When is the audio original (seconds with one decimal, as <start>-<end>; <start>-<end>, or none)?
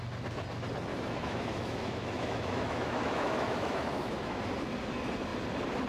0.0-0.9; 4.4-5.9